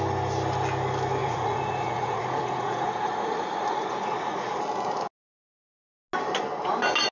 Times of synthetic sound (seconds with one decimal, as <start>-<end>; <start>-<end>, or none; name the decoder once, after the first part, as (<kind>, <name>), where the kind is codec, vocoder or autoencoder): 1.2-4.5 (vocoder, Vocos)